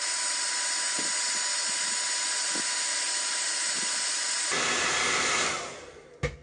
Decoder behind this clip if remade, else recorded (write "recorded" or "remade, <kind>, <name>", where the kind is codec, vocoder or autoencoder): recorded